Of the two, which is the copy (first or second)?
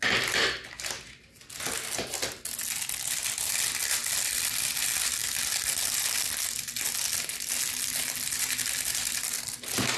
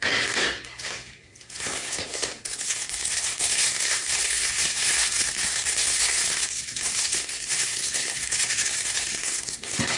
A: second